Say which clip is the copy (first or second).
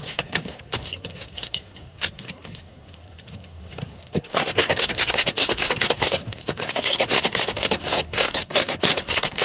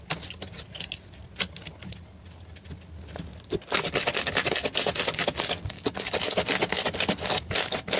first